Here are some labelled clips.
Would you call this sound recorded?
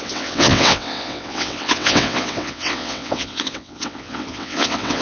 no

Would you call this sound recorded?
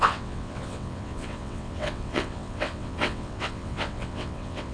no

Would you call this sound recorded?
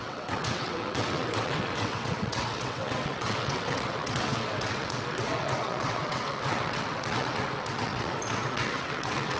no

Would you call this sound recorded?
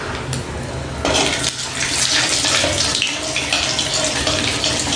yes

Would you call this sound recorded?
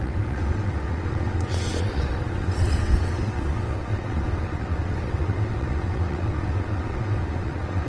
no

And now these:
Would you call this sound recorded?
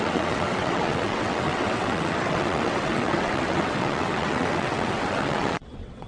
no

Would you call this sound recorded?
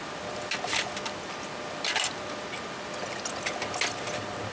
yes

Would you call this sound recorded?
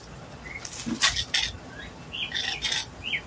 yes